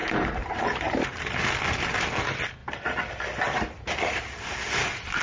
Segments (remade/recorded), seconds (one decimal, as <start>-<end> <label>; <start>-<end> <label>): 0.0-1.5 remade; 1.5-2.6 recorded; 2.6-4.2 remade; 4.2-5.2 recorded